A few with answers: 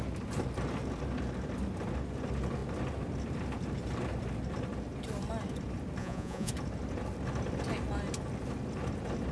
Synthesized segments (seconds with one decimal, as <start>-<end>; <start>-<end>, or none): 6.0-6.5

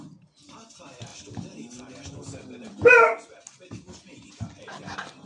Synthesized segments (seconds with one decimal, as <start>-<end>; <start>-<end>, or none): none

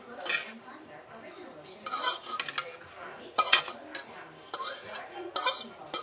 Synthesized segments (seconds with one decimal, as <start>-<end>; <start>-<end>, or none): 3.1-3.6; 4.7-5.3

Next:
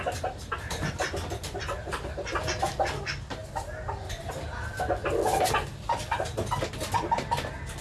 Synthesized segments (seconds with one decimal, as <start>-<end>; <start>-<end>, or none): none

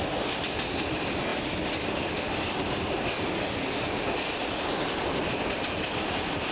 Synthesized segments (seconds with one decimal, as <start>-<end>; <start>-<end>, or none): none